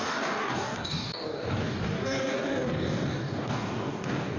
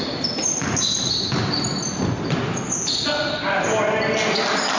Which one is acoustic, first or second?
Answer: second